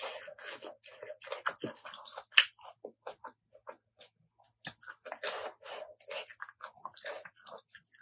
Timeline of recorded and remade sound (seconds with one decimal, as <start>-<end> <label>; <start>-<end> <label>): 0.0-6.9 recorded; 6.9-7.6 remade; 7.6-8.0 recorded